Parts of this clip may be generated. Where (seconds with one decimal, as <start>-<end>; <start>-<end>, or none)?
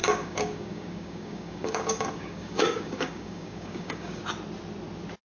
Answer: 0.0-4.2